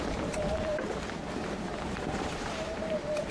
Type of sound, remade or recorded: remade